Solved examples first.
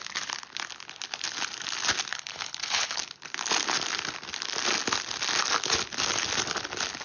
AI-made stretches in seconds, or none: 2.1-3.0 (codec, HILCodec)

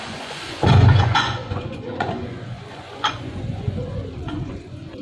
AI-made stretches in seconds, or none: 0.0-5.0 (vocoder, Vocos)

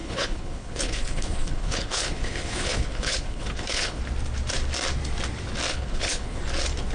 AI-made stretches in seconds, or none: 0.0-4.0 (codec, HILCodec); 5.7-6.4

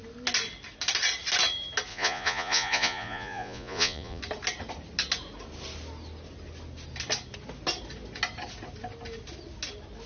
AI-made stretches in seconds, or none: 1.9-4.2 (vocoder, Vocos)

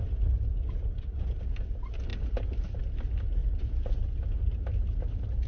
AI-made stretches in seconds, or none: none